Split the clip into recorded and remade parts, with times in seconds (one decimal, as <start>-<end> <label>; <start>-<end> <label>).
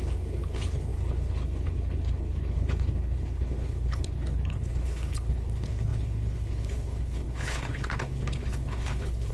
0.0-9.3 remade